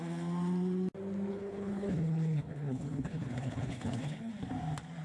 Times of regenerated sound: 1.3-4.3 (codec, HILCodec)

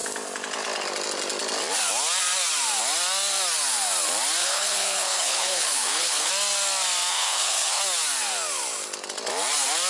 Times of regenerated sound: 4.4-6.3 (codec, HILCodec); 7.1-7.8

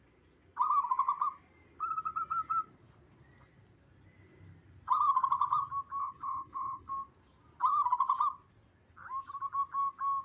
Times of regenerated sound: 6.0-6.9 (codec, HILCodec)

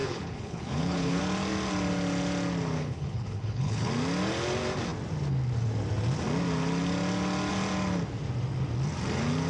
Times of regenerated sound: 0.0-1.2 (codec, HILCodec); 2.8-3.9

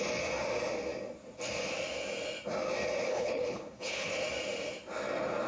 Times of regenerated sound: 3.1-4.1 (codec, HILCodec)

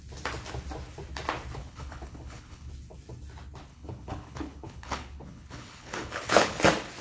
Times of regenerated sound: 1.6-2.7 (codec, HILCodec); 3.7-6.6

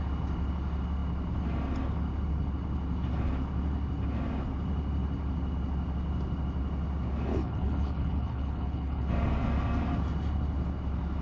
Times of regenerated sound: 7.3-9.1 (codec, HILCodec)